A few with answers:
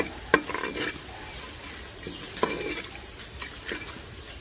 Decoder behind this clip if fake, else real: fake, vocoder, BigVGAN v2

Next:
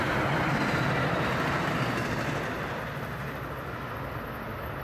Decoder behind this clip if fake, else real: real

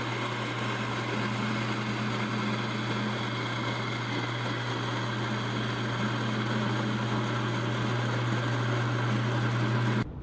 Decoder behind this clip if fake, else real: real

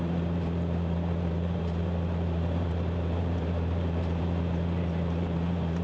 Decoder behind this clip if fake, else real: fake, vocoder, BigVGAN v2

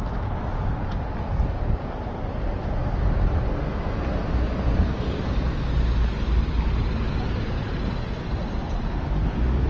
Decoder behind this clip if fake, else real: real